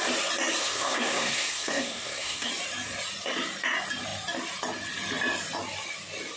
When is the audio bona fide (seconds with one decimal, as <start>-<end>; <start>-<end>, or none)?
0.0-0.6; 2.5-6.4